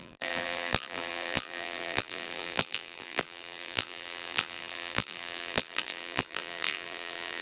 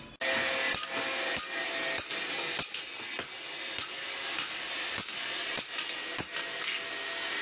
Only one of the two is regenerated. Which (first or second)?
first